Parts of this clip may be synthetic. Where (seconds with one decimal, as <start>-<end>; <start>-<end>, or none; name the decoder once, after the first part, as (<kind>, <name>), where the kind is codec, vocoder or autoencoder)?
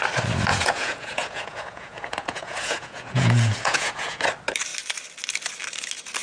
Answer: 0.5-4.2 (vocoder, Vocos)